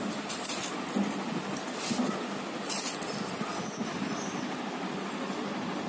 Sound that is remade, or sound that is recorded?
recorded